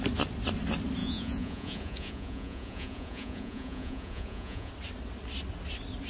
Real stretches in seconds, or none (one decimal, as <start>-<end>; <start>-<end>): 0.0-1.0; 4.7-6.1